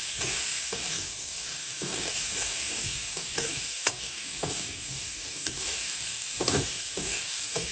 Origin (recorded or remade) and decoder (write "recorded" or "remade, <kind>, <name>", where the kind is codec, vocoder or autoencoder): remade, codec, DAC